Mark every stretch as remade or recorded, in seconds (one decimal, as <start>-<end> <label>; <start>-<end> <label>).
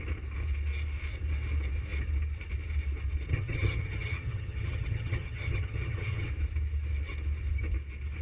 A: 0.0-3.3 recorded; 3.3-6.3 remade; 6.3-8.2 recorded